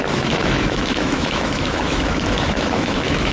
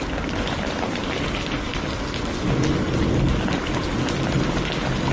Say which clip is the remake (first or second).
first